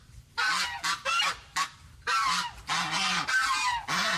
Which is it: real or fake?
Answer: real